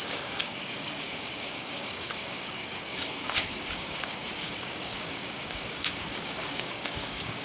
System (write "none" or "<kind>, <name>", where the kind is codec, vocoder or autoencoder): codec, DAC